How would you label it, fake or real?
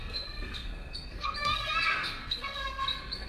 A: fake